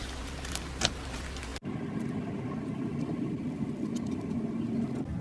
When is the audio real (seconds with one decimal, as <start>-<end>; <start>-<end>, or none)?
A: 0.0-5.2